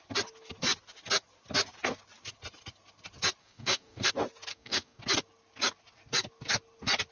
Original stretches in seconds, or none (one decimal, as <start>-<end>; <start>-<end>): 0.0-3.4; 4.1-4.5; 5.0-7.1